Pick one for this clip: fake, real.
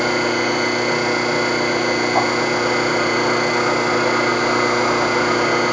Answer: real